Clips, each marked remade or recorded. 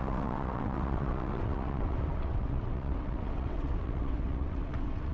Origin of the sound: remade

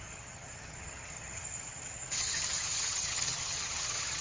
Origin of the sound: remade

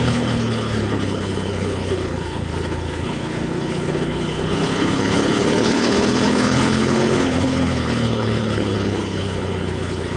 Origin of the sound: remade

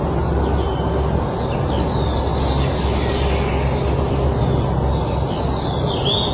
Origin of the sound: recorded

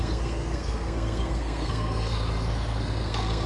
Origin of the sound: remade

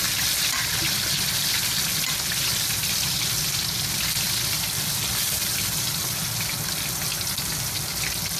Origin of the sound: recorded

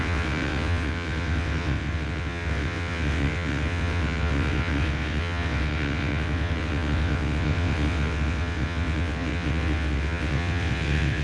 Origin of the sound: remade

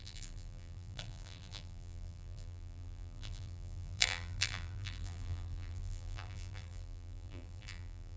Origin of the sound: remade